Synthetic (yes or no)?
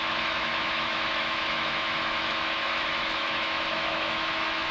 yes